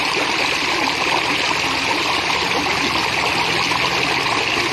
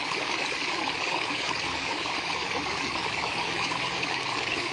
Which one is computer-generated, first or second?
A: second